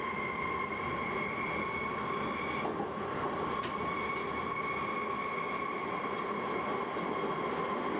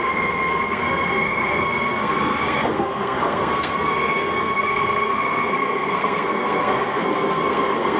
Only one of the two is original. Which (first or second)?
first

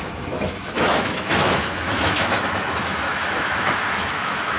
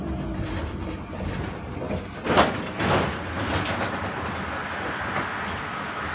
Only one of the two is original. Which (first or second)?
second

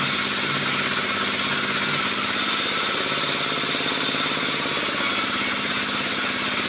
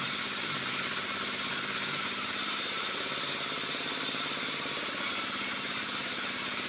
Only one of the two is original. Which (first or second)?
first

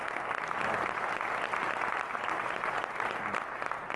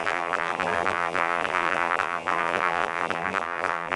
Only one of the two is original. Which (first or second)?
first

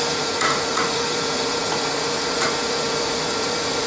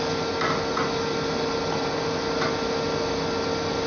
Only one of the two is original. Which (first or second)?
second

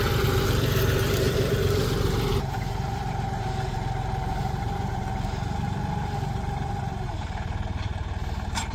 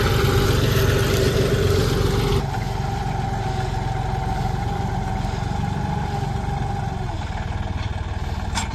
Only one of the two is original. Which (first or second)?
second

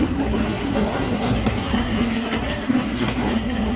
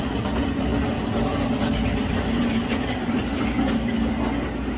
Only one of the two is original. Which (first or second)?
second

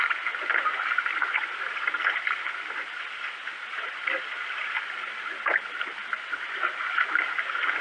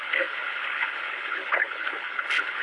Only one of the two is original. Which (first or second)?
first